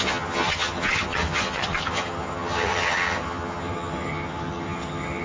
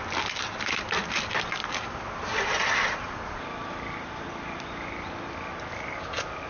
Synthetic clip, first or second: first